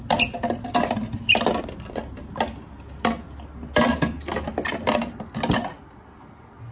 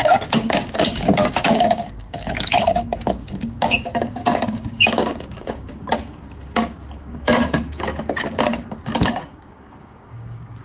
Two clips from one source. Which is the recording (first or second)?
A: first